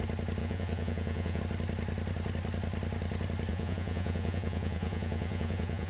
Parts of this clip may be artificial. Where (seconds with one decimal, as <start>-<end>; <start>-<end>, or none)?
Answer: 0.4-1.4; 3.5-5.9